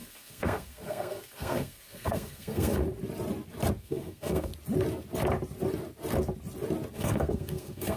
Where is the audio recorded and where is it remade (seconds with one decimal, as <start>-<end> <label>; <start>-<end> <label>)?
0.0-2.8 remade; 2.8-3.8 recorded; 3.8-4.5 remade; 4.5-6.9 recorded; 6.9-8.0 remade